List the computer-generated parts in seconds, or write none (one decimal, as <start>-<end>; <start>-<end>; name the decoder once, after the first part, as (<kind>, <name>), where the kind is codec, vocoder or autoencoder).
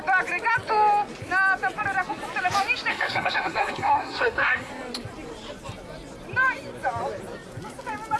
2.9-4.7 (codec, SNAC)